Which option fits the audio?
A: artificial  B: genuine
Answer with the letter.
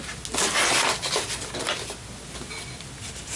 B